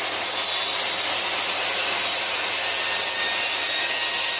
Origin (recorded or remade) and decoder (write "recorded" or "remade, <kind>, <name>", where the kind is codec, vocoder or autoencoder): recorded